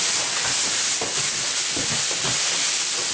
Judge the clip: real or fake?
real